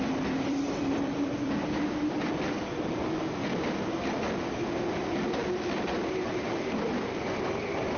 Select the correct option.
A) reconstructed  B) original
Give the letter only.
A